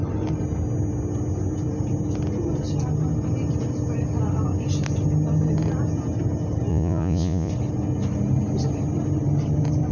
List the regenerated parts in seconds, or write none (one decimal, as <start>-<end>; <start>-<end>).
6.7-7.5